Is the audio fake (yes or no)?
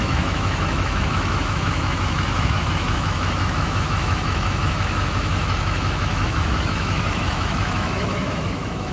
yes